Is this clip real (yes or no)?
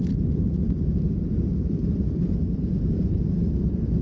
no